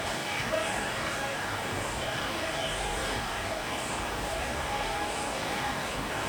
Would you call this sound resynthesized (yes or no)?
yes